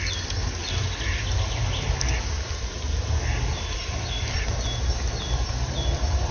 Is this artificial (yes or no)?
no